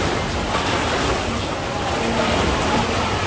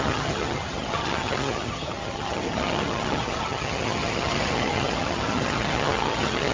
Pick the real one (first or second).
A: first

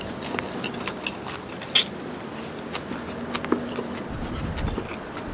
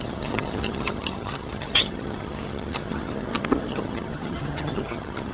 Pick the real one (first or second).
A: first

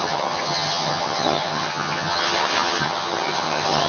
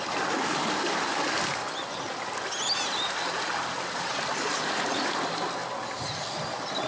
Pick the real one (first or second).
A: second